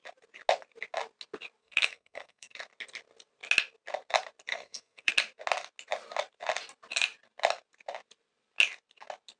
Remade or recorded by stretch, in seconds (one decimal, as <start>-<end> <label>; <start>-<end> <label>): 0.0-1.6 recorded; 1.6-2.6 remade; 2.6-4.5 recorded; 4.5-5.1 remade; 5.1-9.4 recorded